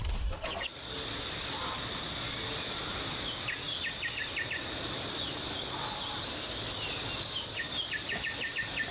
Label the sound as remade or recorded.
recorded